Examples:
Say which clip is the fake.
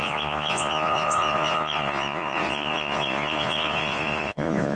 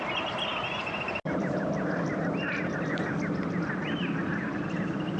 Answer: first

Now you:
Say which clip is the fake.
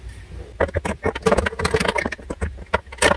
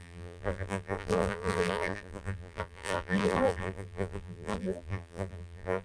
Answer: second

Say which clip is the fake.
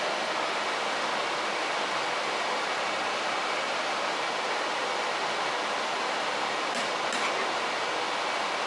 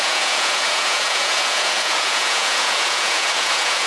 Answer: second